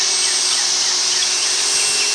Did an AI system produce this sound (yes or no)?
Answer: no